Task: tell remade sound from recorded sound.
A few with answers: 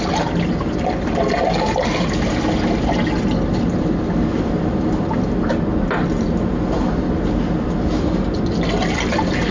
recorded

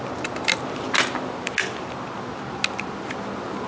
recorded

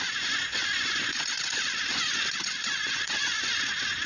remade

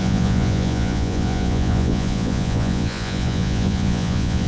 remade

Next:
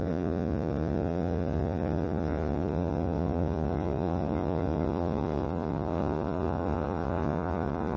remade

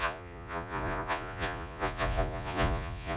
remade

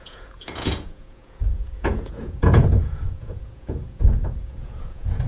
remade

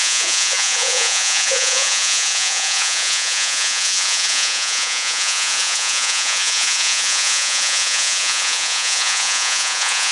remade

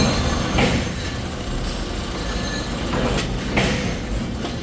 recorded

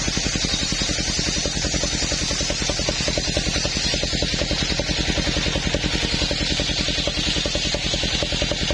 recorded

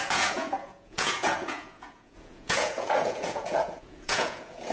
remade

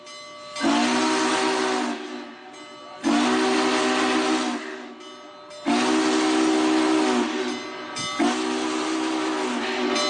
recorded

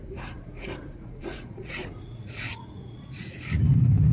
remade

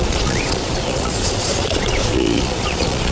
remade